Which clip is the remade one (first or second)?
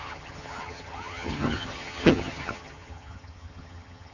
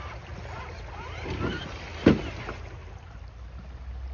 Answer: first